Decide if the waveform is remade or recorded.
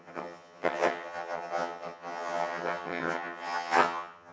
remade